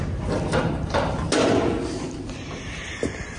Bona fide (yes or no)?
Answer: yes